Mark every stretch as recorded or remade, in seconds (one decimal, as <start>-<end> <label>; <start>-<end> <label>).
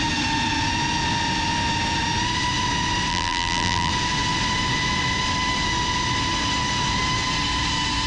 0.0-3.1 recorded; 3.1-3.9 remade; 3.9-8.1 recorded